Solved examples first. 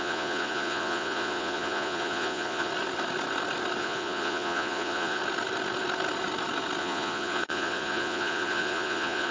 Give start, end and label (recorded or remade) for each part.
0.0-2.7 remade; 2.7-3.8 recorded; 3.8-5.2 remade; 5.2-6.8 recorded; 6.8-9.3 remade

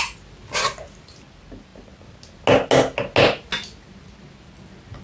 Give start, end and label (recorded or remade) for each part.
0.0-5.0 recorded